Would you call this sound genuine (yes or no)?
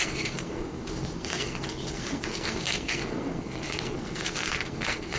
no